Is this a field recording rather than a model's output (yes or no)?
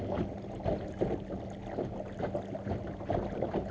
yes